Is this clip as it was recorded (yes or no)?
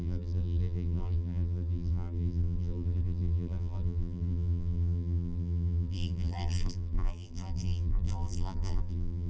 no